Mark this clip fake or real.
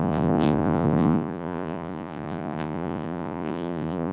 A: fake